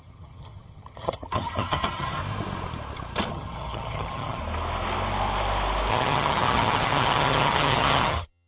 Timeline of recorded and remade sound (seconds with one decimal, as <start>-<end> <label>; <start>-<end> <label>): 0.0-2.2 remade; 2.2-3.3 recorded; 3.3-4.4 remade; 4.4-5.9 recorded; 5.9-8.5 remade